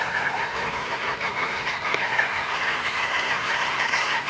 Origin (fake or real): fake